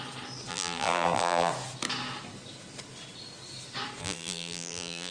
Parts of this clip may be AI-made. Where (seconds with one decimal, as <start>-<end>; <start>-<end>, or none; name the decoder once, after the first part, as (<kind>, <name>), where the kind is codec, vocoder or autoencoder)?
0.5-1.5 (vocoder, BigVGAN v2); 4.0-5.1